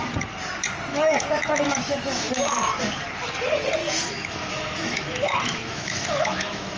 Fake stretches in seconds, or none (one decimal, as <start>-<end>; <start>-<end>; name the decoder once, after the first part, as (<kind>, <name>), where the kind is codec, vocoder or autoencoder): 0.9-2.3 (autoencoder, DAC-VAE); 3.8-6.8